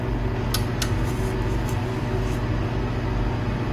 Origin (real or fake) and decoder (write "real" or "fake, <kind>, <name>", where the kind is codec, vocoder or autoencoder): real